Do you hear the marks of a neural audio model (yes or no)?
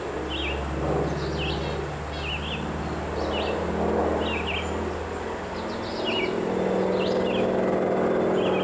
no